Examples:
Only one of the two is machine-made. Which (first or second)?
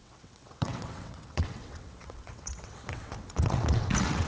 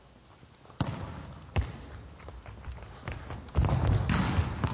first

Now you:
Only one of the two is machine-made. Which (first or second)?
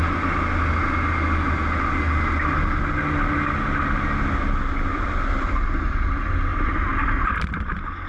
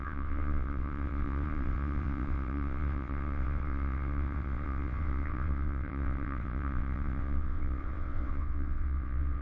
second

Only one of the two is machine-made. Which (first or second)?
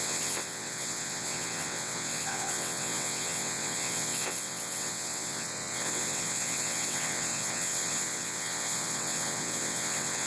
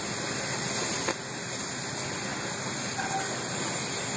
first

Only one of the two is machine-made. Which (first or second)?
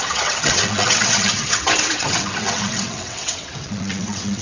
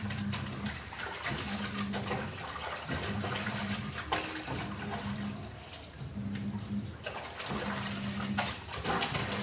first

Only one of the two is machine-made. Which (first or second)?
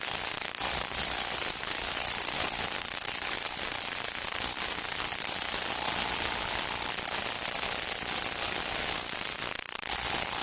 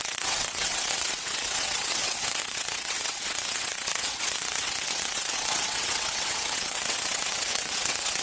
second